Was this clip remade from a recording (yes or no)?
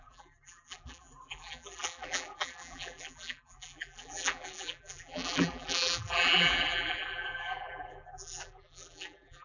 yes